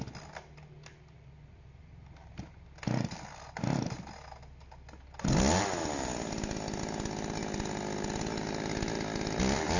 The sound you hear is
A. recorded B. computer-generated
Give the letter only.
A